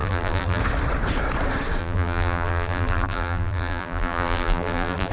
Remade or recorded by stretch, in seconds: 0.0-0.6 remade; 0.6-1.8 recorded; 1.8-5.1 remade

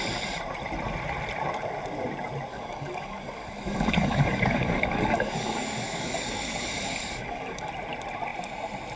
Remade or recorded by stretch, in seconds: 0.0-2.5 recorded; 2.5-7.7 remade; 7.7-9.0 recorded

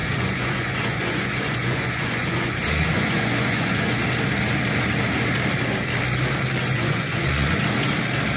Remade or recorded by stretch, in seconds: 0.0-4.0 remade; 4.0-6.6 recorded; 6.6-7.6 remade; 7.6-8.4 recorded

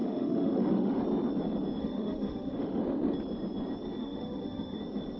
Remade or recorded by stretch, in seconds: 0.0-1.0 remade; 1.0-1.8 recorded; 1.8-2.8 remade; 2.8-4.0 recorded; 4.0-4.8 remade; 4.8-5.2 recorded

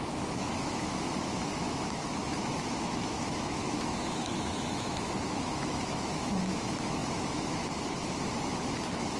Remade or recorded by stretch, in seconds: 0.0-9.2 remade

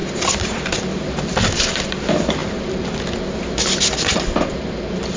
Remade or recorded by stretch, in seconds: 0.0-2.4 remade; 2.4-4.5 recorded; 4.5-5.2 remade

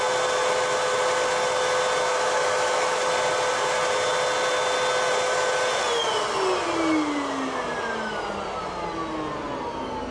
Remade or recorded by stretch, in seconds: 0.0-2.1 recorded; 2.1-3.1 remade; 3.1-10.1 recorded